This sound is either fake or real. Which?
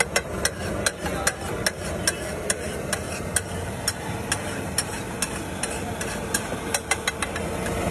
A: real